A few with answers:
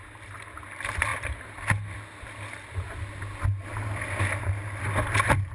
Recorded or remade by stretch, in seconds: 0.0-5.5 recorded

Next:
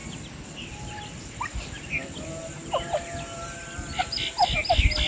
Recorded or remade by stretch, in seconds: 0.0-1.9 remade; 1.9-5.1 recorded

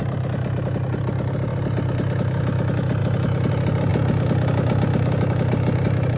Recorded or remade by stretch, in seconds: 0.0-6.2 recorded

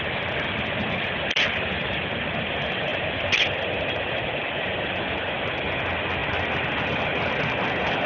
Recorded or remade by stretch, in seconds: 0.0-8.1 recorded

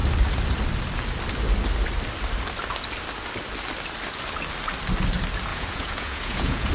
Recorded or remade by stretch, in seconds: 0.0-5.5 recorded; 5.5-6.7 remade

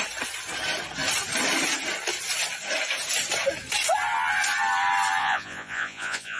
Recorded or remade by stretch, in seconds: 0.0-5.2 recorded; 5.2-6.4 remade

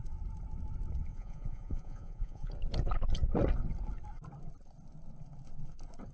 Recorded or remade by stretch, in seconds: 0.0-1.1 recorded; 1.1-2.5 remade; 2.5-6.1 recorded

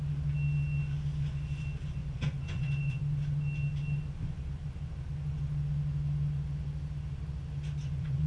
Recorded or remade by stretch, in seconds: 0.0-2.0 recorded; 2.0-3.0 remade; 3.0-7.8 recorded; 7.8-8.3 remade